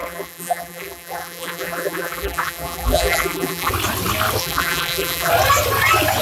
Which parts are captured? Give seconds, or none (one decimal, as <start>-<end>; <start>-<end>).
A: 3.7-4.4; 5.3-6.2